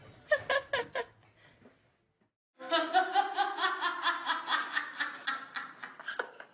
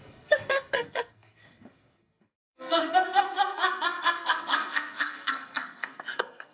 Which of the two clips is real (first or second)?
first